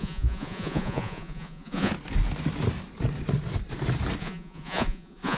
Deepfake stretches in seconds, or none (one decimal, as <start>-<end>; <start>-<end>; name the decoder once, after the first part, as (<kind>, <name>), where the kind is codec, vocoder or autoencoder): 0.0-1.9 (vocoder, Vocos); 4.2-5.4